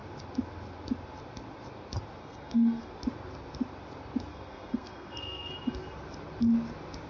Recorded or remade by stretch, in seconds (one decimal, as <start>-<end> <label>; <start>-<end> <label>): 0.0-2.2 recorded; 2.2-2.9 remade; 2.9-4.3 recorded; 4.3-5.5 remade; 5.5-7.1 recorded

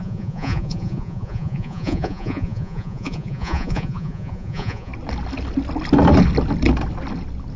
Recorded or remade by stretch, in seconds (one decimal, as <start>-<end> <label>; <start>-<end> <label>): 0.0-4.9 remade; 4.9-7.6 recorded

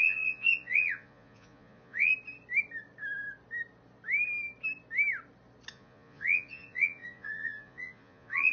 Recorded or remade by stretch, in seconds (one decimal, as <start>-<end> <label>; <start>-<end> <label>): 0.0-2.1 remade; 2.1-5.7 recorded; 5.7-8.5 remade

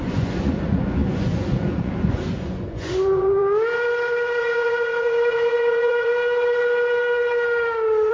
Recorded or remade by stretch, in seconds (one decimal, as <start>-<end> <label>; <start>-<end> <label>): 0.0-3.4 remade; 3.4-4.4 recorded; 4.4-6.1 remade; 6.1-8.1 recorded